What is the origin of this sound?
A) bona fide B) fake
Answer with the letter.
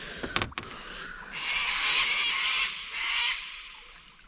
A